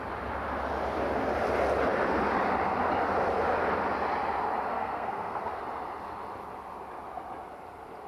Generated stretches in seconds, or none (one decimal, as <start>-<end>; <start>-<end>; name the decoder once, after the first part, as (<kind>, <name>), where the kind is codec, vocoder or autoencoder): 4.7-5.6 (codec, SNAC)